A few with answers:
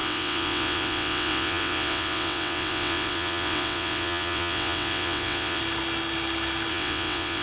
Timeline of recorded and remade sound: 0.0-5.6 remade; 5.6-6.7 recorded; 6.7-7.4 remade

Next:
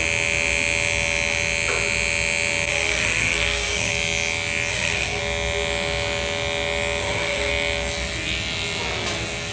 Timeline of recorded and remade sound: 0.0-2.7 recorded; 2.7-3.9 remade; 3.9-4.7 recorded; 4.7-5.2 remade; 5.2-7.0 recorded; 7.0-7.5 remade; 7.5-9.5 recorded

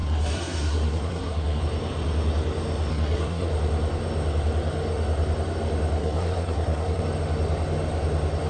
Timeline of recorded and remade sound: 0.0-1.6 remade; 1.6-2.9 recorded; 2.9-3.5 remade; 3.5-6.0 recorded; 6.0-7.0 remade; 7.0-8.5 recorded

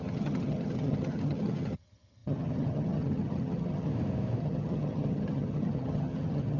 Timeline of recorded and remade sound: 0.0-3.9 remade; 3.9-4.4 recorded; 4.4-6.6 remade